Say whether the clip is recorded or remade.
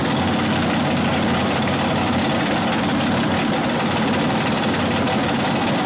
recorded